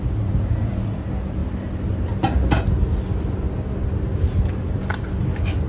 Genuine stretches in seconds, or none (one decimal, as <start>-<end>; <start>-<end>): 0.0-5.7